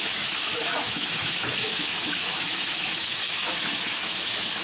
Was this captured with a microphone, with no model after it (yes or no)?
no